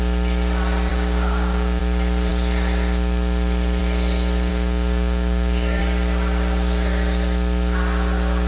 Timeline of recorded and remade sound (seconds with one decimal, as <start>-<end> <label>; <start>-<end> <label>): 0.0-0.9 recorded; 0.9-1.8 remade; 1.8-4.5 recorded; 4.5-5.8 remade; 5.8-8.5 recorded